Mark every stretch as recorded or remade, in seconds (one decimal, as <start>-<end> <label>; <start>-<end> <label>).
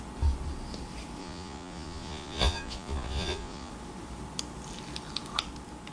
0.0-1.2 recorded; 1.2-3.7 remade; 3.7-5.9 recorded